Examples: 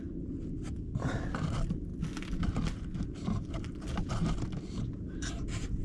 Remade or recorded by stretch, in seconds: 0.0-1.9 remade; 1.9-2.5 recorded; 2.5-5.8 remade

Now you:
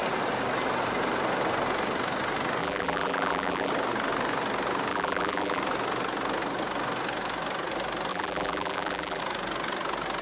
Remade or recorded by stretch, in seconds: 0.0-2.6 recorded; 2.6-3.7 remade; 3.7-4.9 recorded; 4.9-5.6 remade; 5.6-8.1 recorded; 8.1-9.2 remade; 9.2-10.2 recorded

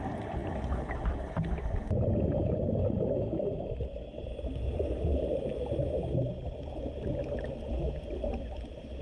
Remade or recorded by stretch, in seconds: 0.0-5.1 recorded; 5.1-5.8 remade; 5.8-9.0 recorded

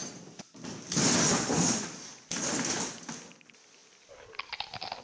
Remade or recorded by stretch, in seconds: 0.0-5.0 recorded

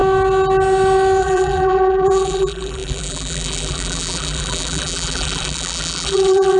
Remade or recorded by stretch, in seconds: 0.0-1.2 recorded; 1.2-6.6 remade

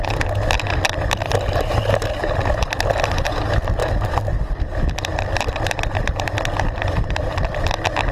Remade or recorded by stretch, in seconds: 0.0-1.2 recorded; 1.2-1.8 remade; 1.8-3.8 recorded; 3.8-7.6 remade; 7.6-8.1 recorded

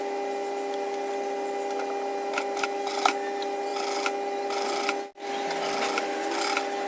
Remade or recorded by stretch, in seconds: 0.0-6.9 recorded

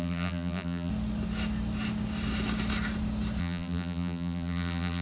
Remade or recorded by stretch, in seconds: 0.0-0.9 remade; 0.9-3.4 recorded; 3.4-5.0 remade